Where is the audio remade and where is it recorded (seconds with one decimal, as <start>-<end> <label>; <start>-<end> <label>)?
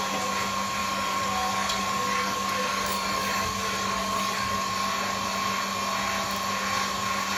0.0-0.8 recorded; 0.8-4.7 remade; 4.7-7.4 recorded